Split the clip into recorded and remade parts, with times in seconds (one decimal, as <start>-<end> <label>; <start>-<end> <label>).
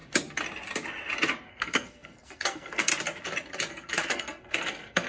0.0-1.5 recorded; 1.5-2.9 remade; 2.9-3.7 recorded; 3.7-5.1 remade